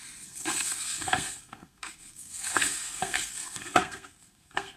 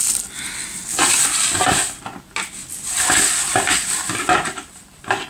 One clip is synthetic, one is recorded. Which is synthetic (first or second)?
first